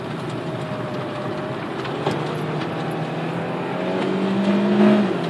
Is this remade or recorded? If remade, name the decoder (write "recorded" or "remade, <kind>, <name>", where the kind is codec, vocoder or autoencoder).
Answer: recorded